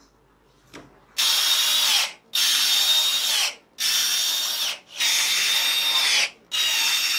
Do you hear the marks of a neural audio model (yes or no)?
no